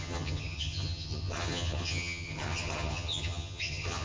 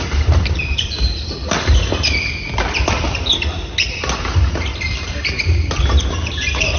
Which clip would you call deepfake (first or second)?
first